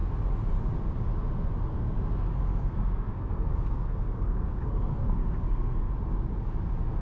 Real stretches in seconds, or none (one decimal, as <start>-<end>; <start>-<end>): 0.0-1.7; 5.9-7.0